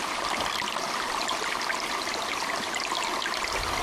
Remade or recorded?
recorded